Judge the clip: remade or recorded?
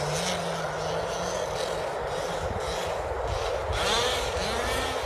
recorded